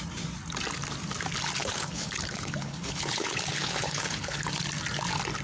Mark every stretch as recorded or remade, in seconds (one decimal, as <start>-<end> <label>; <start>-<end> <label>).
0.0-1.6 recorded; 1.6-4.5 remade; 4.5-5.4 recorded

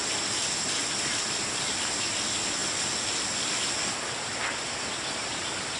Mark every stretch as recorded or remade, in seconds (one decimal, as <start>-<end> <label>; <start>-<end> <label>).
0.0-5.8 recorded

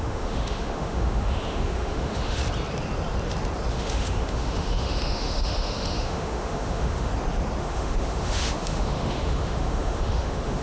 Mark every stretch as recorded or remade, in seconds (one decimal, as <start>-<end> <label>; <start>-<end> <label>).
0.0-2.4 remade; 2.4-3.7 recorded; 3.7-7.1 remade; 7.1-7.6 recorded; 7.6-10.6 remade